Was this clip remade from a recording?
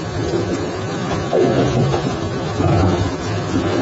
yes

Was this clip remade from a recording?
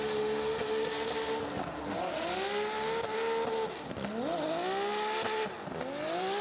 no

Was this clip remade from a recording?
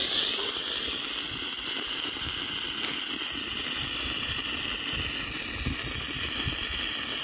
no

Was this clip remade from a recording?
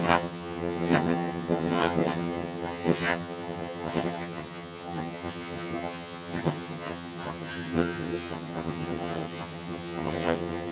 yes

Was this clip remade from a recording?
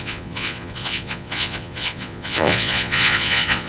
yes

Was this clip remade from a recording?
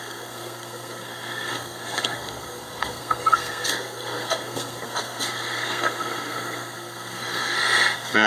yes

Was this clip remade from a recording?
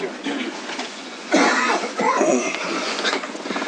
yes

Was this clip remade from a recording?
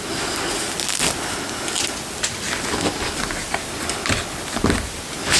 no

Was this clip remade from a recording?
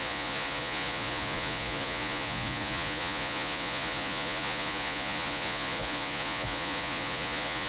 yes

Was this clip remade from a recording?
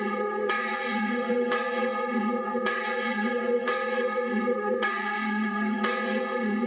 yes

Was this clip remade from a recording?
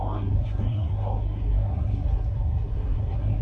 yes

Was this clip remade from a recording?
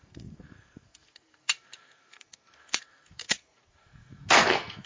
yes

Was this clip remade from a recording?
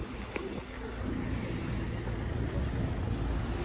no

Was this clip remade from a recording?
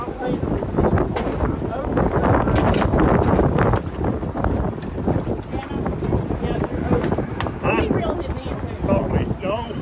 no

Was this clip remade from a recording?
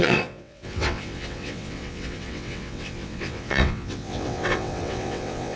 yes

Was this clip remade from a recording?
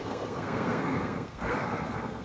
yes